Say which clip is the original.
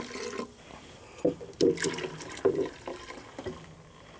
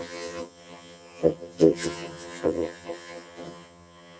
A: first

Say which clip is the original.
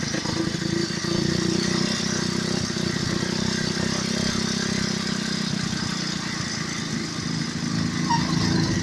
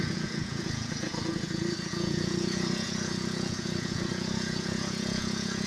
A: first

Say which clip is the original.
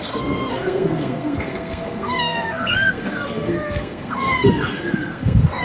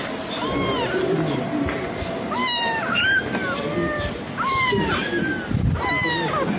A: second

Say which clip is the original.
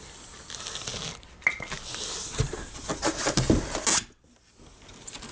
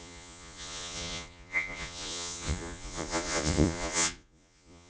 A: first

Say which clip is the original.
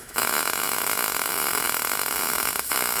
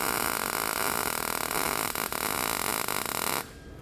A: second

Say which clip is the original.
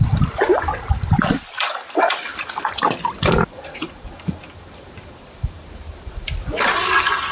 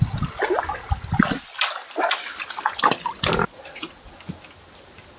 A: second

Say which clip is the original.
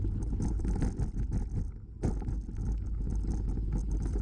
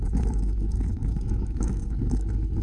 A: first